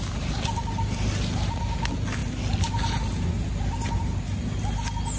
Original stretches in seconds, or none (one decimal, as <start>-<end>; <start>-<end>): 0.0-5.2